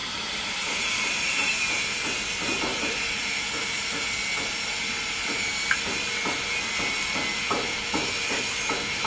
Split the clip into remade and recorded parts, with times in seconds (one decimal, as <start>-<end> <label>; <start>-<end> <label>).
0.0-1.5 remade; 1.5-2.7 recorded; 2.7-3.3 remade; 3.3-9.1 recorded